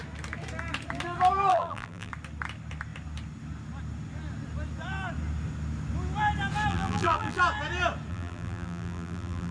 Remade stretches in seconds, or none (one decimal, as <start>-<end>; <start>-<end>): 1.5-2.1; 6.7-7.4; 8.1-9.5

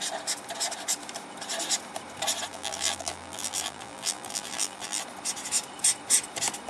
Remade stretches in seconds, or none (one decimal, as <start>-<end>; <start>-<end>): 2.5-5.0

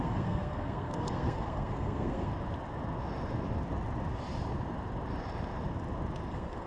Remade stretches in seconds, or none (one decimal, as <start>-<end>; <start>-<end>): 0.0-2.3; 6.3-6.7